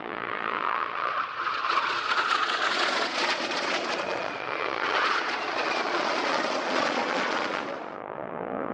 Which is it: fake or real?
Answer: fake